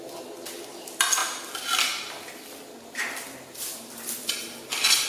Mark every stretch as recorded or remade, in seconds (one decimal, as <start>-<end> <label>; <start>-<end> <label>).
0.0-5.1 recorded